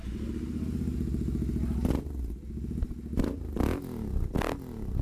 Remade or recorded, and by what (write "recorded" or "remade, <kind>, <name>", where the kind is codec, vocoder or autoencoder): recorded